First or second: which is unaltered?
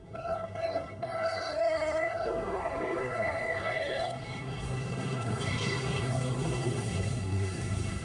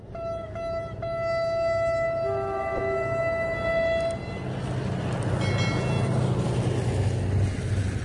second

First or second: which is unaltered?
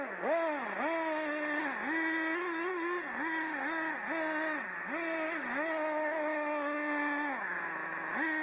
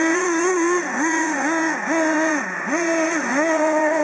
first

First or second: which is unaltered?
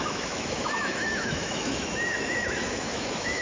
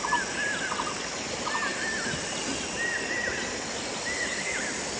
second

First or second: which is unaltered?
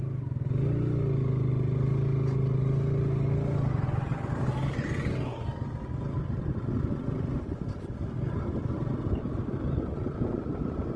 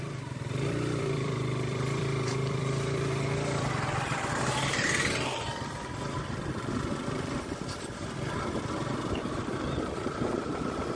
first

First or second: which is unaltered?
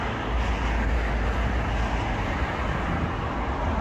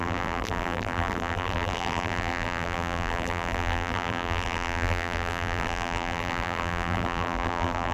first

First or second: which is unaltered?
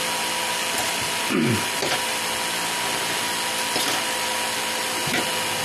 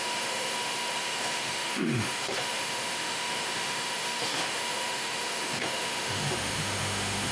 first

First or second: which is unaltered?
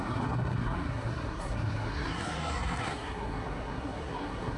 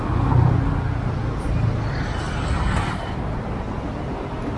second